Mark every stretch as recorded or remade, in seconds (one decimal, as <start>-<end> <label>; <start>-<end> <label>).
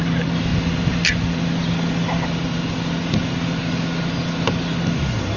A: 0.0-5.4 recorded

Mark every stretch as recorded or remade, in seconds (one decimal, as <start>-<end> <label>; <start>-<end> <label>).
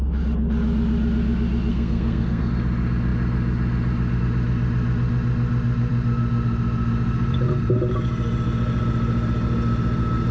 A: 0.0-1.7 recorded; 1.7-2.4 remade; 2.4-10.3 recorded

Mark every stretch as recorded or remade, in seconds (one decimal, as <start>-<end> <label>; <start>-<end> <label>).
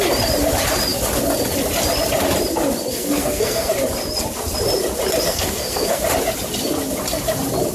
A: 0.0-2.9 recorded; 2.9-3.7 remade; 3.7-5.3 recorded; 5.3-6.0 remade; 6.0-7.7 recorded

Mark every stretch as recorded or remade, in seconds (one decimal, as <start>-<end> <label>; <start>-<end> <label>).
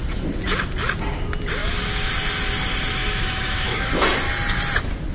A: 0.0-1.6 recorded; 1.6-2.1 remade; 2.1-3.0 recorded; 3.0-3.9 remade; 3.9-5.1 recorded